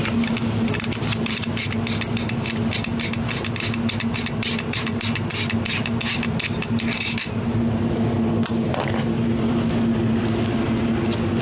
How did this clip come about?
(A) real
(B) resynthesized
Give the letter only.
A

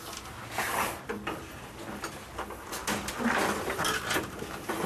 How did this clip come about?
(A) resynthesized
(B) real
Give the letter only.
B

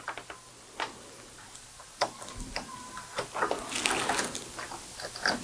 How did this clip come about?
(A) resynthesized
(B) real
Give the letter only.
B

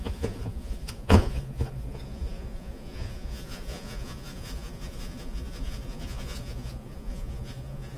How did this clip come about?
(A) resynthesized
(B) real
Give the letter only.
A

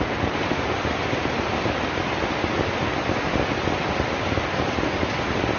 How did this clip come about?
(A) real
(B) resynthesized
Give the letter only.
A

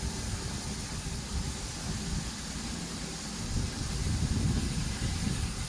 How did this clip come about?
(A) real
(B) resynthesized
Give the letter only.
A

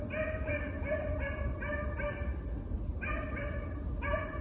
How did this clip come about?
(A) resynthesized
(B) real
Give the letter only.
B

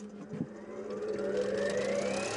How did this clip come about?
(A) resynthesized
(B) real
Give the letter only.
B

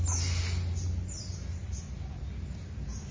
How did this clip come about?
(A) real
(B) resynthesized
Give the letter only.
A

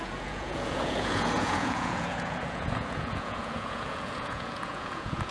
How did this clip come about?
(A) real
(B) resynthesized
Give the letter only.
B